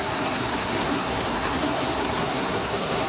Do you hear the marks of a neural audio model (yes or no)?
yes